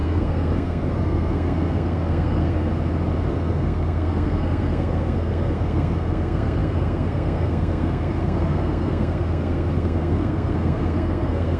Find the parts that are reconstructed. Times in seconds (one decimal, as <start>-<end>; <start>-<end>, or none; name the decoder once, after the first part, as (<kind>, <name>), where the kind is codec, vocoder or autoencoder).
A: 0.0-2.7 (codec, SNAC); 3.3-11.6